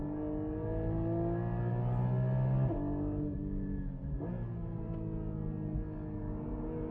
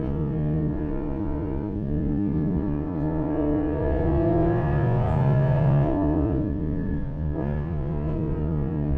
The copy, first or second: second